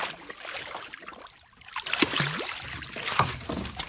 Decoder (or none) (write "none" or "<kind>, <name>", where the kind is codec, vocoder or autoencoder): none